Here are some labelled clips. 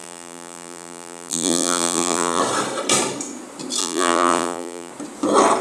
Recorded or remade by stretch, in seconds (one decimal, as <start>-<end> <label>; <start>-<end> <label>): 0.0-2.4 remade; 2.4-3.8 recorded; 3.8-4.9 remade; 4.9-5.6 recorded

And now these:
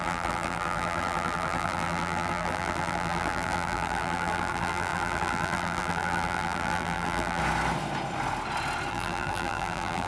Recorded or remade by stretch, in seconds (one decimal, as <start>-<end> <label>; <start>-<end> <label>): 0.0-7.4 remade; 7.4-8.9 recorded; 8.9-10.1 remade

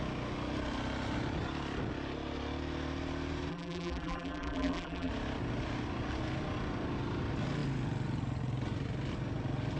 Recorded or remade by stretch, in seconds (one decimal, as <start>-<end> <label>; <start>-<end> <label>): 0.0-3.5 recorded; 3.5-5.1 remade; 5.1-9.8 recorded

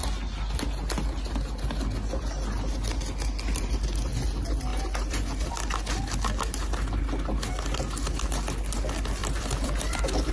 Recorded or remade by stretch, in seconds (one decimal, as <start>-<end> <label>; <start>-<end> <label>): 0.0-4.7 recorded; 4.7-5.5 remade; 5.5-9.2 recorded; 9.2-10.3 remade

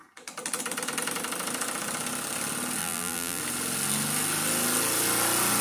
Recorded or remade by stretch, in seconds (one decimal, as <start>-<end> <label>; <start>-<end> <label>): 0.0-2.8 recorded; 2.8-3.4 remade; 3.4-5.6 recorded

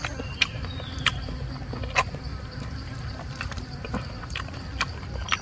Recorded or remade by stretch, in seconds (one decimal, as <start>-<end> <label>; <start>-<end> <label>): 0.0-2.3 recorded; 2.3-4.6 remade; 4.6-5.4 recorded

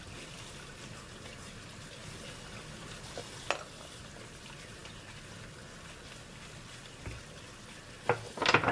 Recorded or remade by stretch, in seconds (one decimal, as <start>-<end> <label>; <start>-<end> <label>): 0.0-8.7 recorded

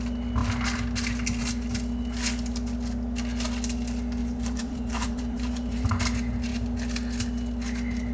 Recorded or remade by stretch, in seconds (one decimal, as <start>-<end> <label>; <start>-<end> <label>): 0.0-4.2 recorded; 4.2-5.9 remade; 5.9-8.1 recorded